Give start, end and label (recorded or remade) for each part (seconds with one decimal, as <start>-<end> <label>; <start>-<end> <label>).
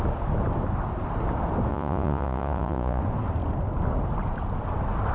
0.0-1.7 recorded; 1.7-3.0 remade; 3.0-5.1 recorded